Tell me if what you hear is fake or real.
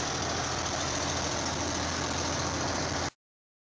real